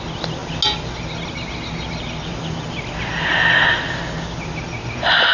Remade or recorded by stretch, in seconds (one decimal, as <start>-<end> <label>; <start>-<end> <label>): 0.0-5.3 recorded